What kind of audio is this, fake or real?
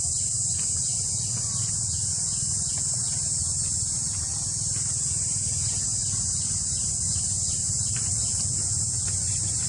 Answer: real